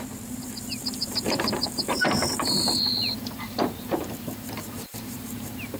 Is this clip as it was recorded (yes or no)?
no